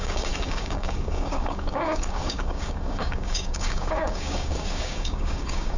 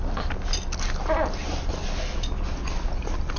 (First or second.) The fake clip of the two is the first